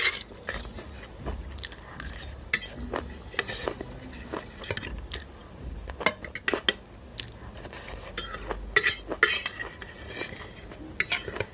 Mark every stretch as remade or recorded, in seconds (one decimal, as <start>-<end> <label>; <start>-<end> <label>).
0.0-11.5 recorded